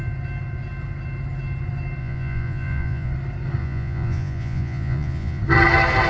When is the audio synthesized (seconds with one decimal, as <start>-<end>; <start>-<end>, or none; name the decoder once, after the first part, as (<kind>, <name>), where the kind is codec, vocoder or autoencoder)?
2.0-3.1 (vocoder, Vocos); 3.6-5.4